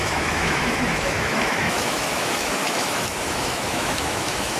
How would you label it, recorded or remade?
remade